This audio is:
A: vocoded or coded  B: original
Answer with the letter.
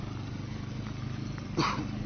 B